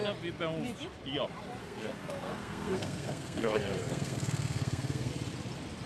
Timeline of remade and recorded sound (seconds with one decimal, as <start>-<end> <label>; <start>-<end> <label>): 0.0-1.6 recorded; 1.6-5.1 remade; 5.1-5.9 recorded

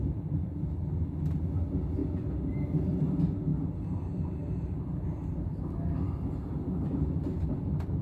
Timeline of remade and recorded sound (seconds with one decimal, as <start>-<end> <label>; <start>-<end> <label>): 0.0-8.0 recorded

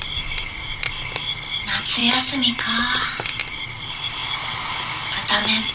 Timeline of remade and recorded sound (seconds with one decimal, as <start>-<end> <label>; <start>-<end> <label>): 0.0-5.7 recorded

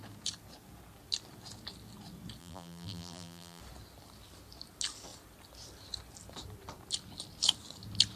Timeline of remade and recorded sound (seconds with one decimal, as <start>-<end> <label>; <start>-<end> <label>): 0.0-2.4 recorded; 2.4-3.6 remade; 3.6-8.2 recorded

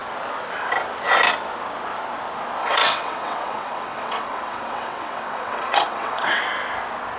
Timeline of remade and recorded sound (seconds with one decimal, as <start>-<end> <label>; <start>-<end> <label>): 0.0-2.6 recorded; 2.6-6.4 remade; 6.4-7.2 recorded

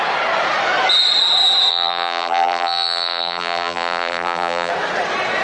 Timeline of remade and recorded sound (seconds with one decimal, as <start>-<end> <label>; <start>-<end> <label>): 0.0-1.7 recorded; 1.7-4.7 remade; 4.7-5.4 recorded

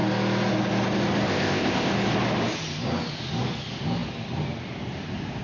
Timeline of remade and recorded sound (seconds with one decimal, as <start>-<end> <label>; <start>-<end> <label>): 0.0-1.3 recorded; 1.3-1.9 remade; 1.9-5.4 recorded